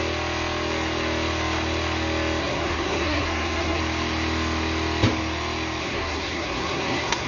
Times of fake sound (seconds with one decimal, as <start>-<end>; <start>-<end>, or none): 2.4-3.8; 5.8-7.3